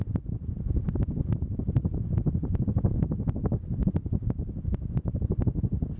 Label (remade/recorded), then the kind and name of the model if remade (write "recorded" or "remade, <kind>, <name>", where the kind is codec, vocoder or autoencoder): recorded